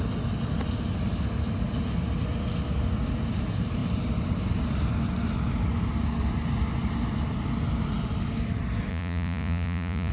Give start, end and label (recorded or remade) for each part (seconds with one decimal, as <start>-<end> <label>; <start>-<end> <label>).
0.0-8.9 recorded; 8.9-10.1 remade